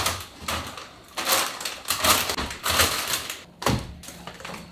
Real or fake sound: real